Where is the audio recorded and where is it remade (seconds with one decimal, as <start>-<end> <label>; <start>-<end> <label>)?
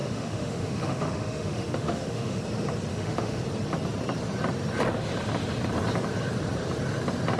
0.0-2.4 remade; 2.4-2.9 recorded; 2.9-3.4 remade; 3.4-7.4 recorded